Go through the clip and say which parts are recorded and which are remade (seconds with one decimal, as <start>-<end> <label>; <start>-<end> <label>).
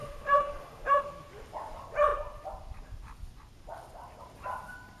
0.0-1.0 remade; 1.0-5.0 recorded